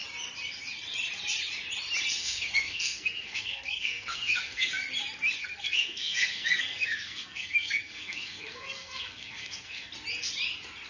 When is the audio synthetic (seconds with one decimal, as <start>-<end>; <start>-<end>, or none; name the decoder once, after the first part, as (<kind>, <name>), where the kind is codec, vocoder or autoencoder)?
2.2-4.7 (codec, SNAC); 5.4-9.9